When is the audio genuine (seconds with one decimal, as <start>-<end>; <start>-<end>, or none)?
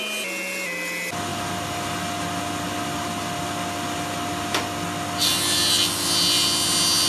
0.0-7.1